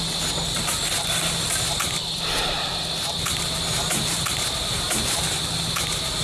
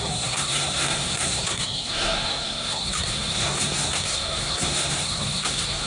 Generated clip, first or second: second